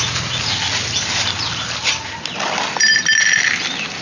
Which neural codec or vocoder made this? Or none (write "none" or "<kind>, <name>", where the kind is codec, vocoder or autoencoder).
none